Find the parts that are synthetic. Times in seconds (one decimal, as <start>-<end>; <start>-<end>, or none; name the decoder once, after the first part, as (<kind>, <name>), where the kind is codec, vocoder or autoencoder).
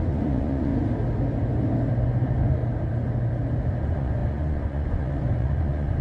0.0-0.7 (vocoder, Vocos); 1.9-2.6; 3.8-6.0